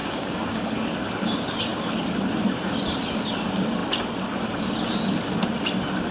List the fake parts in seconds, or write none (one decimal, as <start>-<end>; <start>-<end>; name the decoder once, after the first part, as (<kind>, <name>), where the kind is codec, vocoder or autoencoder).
0.0-0.6 (codec, DAC)